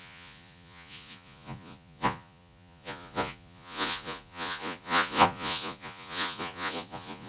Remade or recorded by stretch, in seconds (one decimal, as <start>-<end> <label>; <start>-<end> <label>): 0.0-7.3 remade